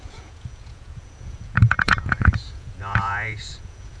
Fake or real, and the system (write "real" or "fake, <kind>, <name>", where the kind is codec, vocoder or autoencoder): fake, vocoder, Vocos